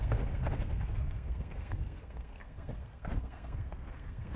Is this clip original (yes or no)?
no